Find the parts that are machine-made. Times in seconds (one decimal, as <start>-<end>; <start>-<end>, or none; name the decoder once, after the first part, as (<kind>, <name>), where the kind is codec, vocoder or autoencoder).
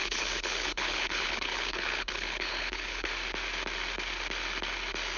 0.0-3.1 (codec, HILCodec)